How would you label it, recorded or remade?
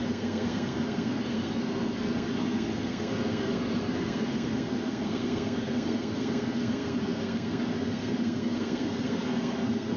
remade